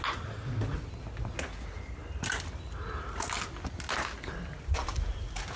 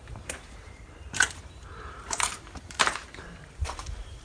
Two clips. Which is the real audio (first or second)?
first